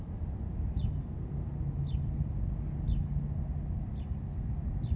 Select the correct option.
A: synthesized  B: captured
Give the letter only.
B